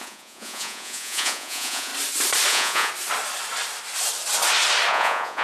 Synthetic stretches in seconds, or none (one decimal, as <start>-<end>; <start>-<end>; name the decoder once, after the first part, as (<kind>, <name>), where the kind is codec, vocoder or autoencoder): 0.0-1.9 (vocoder, Vocos); 2.5-2.9; 4.9-5.4